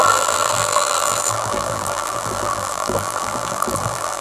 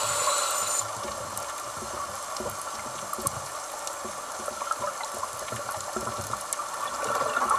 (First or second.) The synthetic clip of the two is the first